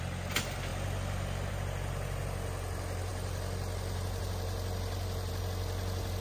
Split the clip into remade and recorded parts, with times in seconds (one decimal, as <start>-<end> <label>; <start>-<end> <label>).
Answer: 0.0-0.7 recorded; 0.7-1.5 remade; 1.5-3.1 recorded; 3.1-5.3 remade; 5.3-6.2 recorded